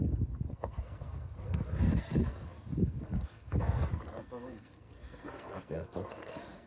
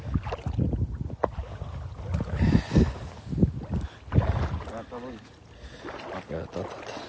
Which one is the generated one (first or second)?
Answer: first